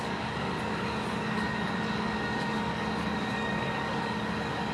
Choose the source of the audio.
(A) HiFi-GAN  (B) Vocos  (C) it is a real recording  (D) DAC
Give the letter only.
D